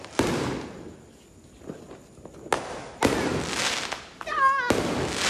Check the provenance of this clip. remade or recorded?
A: recorded